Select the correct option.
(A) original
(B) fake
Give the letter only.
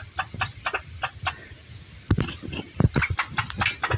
A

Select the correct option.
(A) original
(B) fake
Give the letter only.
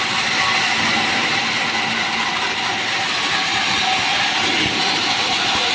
A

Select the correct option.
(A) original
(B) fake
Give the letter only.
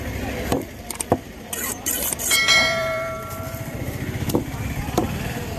B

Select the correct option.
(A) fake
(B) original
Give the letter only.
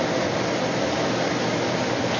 B